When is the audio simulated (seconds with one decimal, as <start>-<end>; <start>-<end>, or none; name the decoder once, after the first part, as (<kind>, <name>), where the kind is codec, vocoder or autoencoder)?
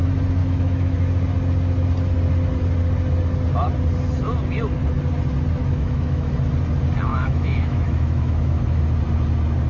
0.4-1.0 (autoencoder, DAC-VAE); 5.6-6.3; 7.1-8.8